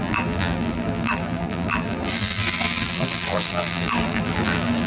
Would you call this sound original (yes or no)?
no